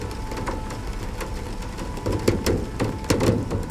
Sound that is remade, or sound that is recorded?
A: recorded